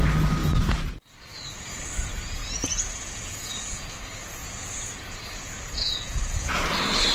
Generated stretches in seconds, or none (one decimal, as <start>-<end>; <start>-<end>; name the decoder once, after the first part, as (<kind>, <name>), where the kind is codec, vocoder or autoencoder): 0.4-0.9 (vocoder, Vocos); 2.4-3.9; 4.4-6.6